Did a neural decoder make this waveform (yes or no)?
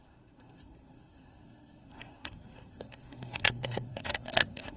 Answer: yes